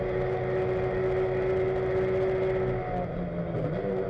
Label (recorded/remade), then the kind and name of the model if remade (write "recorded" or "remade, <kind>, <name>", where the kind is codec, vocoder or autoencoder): recorded